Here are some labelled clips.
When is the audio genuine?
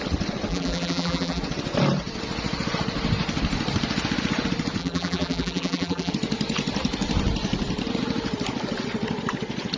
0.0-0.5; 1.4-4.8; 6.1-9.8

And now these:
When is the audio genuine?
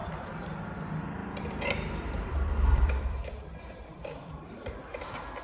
0.0-1.2; 4.3-5.4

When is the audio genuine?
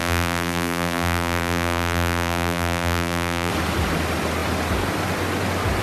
3.5-5.8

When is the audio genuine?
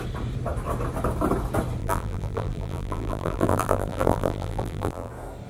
0.0-1.8; 5.1-5.5